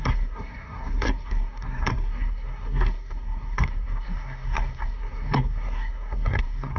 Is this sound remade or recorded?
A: remade